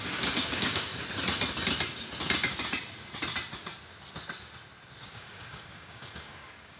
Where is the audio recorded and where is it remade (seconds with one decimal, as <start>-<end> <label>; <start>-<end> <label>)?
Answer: 0.0-0.9 remade; 0.9-5.0 recorded; 5.0-6.8 remade